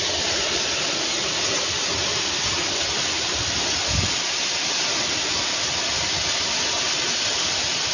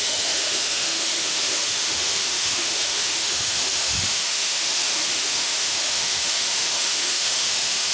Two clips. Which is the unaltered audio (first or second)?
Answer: first